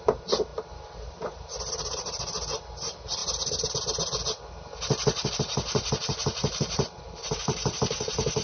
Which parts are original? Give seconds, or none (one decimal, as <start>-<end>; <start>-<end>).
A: 3.2-5.3